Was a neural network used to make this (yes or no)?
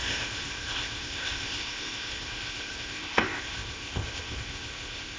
yes